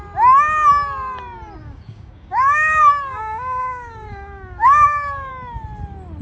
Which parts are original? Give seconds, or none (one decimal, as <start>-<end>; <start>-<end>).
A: 0.0-1.6; 5.3-6.2